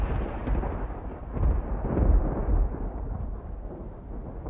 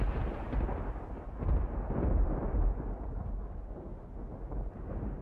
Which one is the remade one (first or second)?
first